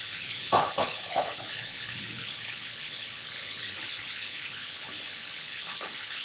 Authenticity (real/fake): fake